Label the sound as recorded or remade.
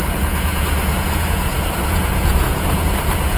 remade